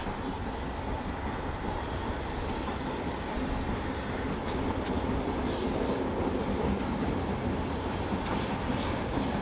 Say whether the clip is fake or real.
real